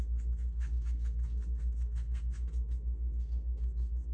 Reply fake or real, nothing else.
fake